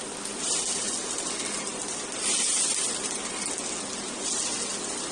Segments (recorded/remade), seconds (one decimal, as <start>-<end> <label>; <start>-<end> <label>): 0.0-5.1 recorded